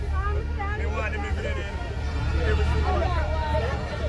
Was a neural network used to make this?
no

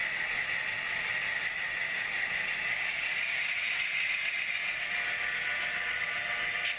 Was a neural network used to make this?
no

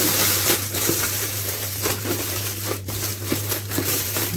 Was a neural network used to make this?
yes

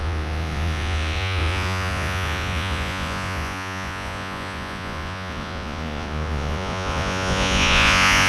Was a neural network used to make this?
yes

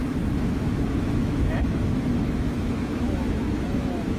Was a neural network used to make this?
yes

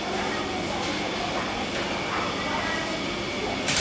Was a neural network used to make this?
no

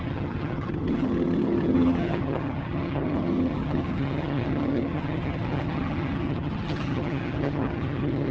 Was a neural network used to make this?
yes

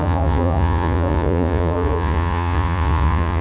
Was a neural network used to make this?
yes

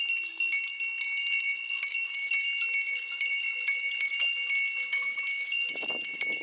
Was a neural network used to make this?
no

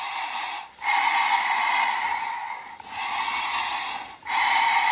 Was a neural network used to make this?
no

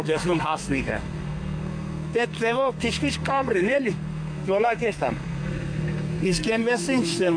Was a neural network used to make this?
yes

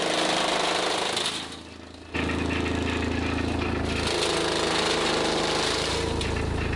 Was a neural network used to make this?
no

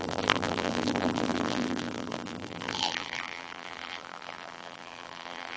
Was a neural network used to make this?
yes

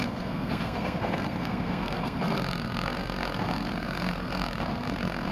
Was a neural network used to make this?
yes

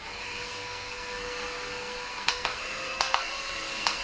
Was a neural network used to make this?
yes